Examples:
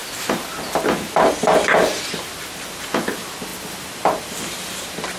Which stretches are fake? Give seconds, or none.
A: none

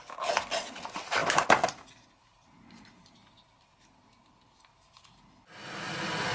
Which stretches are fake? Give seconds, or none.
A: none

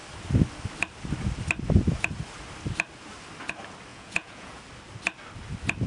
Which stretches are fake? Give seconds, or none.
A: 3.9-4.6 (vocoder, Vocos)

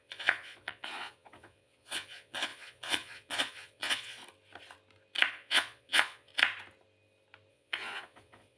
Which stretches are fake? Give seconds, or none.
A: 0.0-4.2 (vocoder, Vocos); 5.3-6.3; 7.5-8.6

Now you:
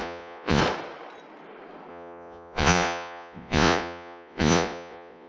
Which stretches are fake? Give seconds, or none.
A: 0.0-0.6 (vocoder, Vocos); 1.9-5.3

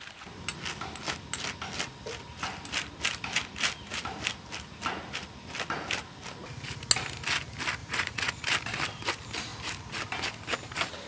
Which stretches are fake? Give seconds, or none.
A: 7.8-8.3 (vocoder, Vocos)

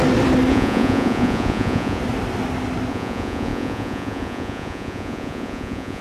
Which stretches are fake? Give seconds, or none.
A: 0.5-2.0 (vocoder, Vocos); 2.9-6.0